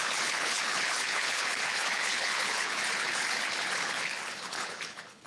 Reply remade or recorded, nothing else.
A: remade